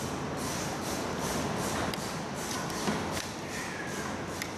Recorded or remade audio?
recorded